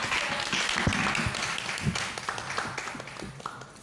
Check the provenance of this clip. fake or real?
real